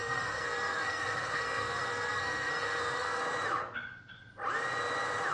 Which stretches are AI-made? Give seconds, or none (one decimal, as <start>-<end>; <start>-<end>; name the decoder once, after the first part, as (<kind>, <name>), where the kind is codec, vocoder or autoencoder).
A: 0.0-3.2 (codec, SNAC)